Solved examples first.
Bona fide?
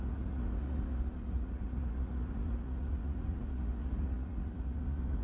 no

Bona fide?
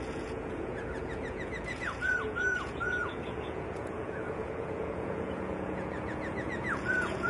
no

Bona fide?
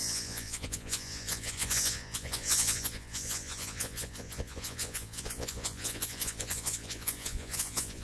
no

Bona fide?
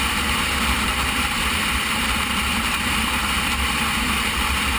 no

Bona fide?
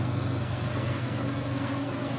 no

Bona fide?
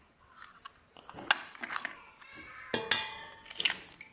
yes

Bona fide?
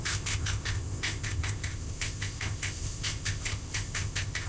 no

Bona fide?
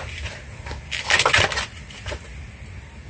yes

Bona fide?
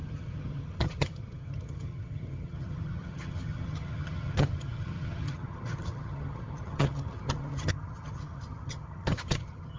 no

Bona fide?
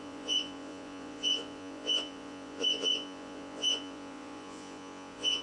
no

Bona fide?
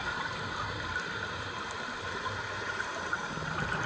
yes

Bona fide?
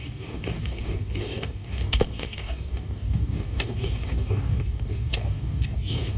no